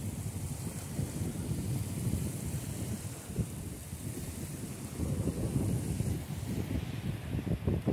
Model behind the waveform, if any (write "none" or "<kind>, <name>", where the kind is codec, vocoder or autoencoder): vocoder, BigVGAN v2